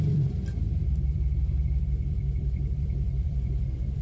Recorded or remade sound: remade